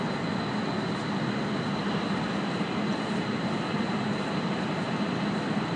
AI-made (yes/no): no